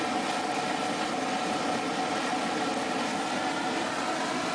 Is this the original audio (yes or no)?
yes